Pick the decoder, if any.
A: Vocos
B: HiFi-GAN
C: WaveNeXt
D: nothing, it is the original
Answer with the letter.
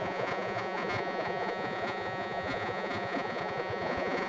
A